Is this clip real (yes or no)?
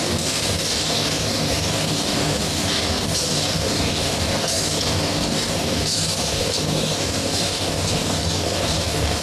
no